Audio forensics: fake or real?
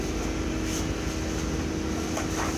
real